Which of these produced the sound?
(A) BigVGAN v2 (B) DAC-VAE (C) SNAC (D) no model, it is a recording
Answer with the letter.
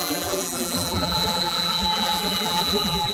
A